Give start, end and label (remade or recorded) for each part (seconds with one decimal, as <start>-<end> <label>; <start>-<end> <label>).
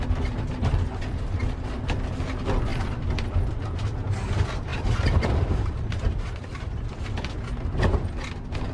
0.0-2.7 recorded; 2.7-3.5 remade; 3.5-4.7 recorded; 4.7-7.0 remade; 7.0-8.7 recorded